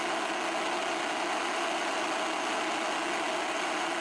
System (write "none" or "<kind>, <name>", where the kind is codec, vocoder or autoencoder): none